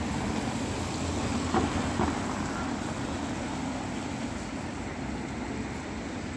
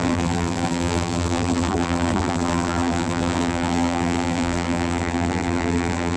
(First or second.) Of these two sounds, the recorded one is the first